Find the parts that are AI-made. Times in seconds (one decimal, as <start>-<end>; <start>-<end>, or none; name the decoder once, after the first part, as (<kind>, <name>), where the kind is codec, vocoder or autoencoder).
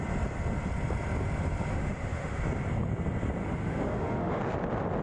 1.7-2.4 (autoencoder, DAC-VAE); 3.4-4.4